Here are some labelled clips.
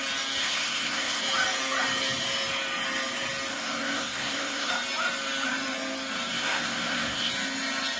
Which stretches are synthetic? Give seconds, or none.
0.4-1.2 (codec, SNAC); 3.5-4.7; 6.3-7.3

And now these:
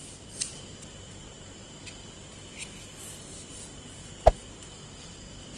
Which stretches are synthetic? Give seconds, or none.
none